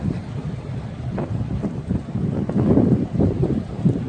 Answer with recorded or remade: recorded